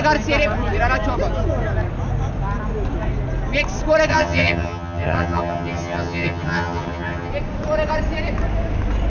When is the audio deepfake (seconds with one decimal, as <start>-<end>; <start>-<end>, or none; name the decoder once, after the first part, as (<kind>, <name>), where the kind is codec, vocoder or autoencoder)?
4.1-7.3 (vocoder, HiFi-GAN)

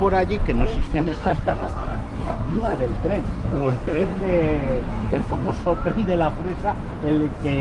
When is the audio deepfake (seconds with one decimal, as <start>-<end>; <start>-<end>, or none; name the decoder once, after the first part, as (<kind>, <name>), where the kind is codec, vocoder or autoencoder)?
0.8-2.8 (codec, SNAC); 3.3-4.2; 4.9-5.5

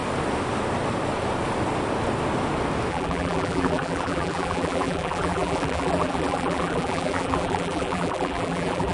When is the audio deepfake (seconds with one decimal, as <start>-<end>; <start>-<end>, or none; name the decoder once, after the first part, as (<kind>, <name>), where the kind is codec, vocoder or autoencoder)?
2.9-8.9 (vocoder, BigVGAN v2)

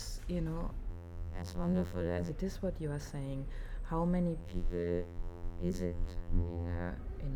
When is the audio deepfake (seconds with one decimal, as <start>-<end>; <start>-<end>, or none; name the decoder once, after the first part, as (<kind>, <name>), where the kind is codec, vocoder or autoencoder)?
0.9-2.3 (vocoder, BigVGAN v2); 4.4-6.9

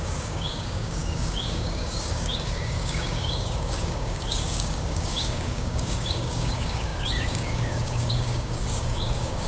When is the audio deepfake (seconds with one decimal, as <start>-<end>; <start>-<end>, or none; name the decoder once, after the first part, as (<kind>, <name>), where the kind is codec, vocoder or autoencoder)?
0.0-9.5 (codec, DAC)

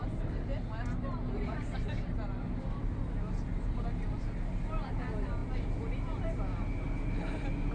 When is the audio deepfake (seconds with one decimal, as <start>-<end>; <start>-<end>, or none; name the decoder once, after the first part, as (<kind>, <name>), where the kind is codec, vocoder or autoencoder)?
none

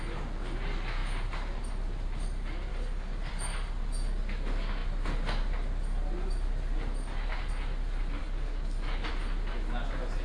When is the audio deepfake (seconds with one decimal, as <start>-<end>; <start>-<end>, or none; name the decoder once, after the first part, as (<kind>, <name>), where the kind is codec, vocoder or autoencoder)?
2.7-3.3 (codec, DAC); 8.2-9.1